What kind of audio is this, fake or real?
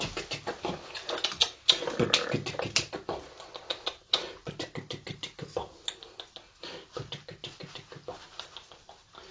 real